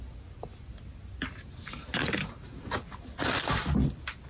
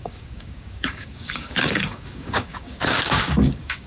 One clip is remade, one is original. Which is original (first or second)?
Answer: first